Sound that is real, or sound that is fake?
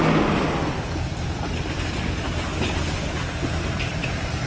real